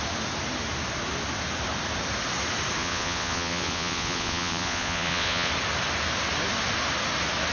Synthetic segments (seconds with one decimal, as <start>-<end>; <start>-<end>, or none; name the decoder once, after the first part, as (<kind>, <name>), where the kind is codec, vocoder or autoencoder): 2.8-5.5 (vocoder, Vocos)